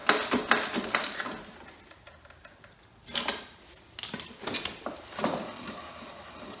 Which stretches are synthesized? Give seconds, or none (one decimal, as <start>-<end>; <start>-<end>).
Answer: none